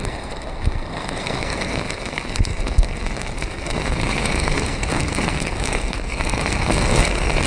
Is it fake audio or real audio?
fake